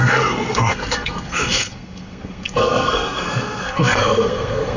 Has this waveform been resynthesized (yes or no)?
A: yes